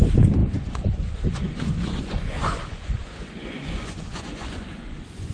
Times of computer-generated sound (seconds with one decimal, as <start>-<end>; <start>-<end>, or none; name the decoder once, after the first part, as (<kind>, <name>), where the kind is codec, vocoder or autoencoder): 0.0-5.3 (vocoder, Vocos)